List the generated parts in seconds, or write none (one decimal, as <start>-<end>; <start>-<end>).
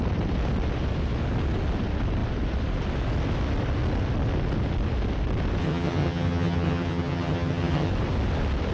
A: 5.6-7.9